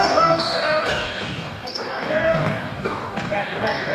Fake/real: fake